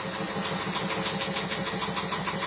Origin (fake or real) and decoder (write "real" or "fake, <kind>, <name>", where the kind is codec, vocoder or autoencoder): real